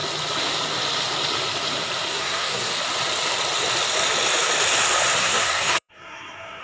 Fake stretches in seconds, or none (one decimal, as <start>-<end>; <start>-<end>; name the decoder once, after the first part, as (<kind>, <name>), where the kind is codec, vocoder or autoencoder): 2.1-2.7 (codec, SNAC); 5.2-6.6